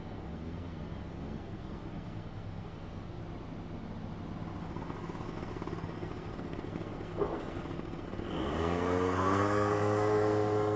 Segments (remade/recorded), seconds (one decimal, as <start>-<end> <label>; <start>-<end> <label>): 0.0-3.2 remade; 3.2-4.6 recorded; 4.6-10.8 remade